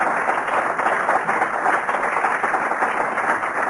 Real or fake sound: real